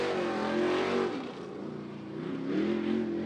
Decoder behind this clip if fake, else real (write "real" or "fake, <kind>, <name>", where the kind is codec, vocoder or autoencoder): real